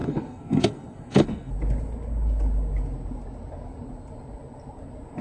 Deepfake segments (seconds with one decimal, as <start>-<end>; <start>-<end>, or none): 0.0-1.5